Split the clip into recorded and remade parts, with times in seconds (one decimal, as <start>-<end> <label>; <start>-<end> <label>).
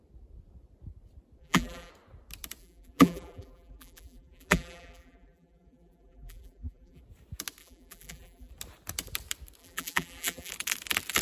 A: 0.0-1.4 recorded; 1.4-1.9 remade; 1.9-2.6 recorded; 2.6-7.0 remade; 7.0-7.6 recorded; 7.6-8.5 remade; 8.5-9.6 recorded; 9.6-10.5 remade; 10.5-11.2 recorded